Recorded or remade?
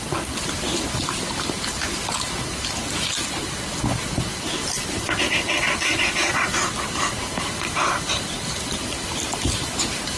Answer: remade